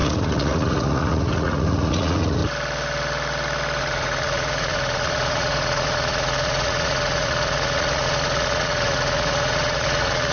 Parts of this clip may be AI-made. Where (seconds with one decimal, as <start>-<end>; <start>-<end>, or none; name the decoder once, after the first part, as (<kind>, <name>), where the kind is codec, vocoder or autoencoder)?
0.0-2.4 (vocoder, Vocos); 3.8-10.3